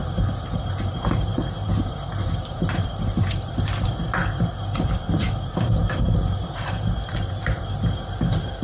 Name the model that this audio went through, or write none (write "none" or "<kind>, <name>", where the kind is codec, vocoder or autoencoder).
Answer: vocoder, BigVGAN v2